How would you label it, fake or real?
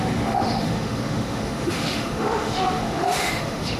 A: fake